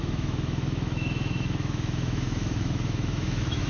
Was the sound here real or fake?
fake